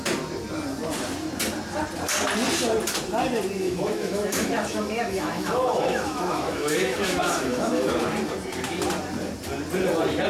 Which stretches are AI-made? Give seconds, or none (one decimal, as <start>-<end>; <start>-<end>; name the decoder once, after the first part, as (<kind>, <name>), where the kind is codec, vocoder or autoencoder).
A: 3.6-7.9 (autoencoder, DAC-VAE)